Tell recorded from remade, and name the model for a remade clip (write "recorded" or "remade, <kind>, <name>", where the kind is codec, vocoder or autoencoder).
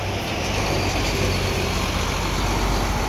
recorded